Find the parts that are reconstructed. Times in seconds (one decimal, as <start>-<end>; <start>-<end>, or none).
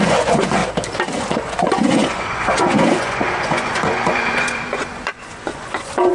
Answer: 0.0-0.6; 1.2-6.1